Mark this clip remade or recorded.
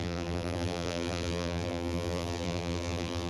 remade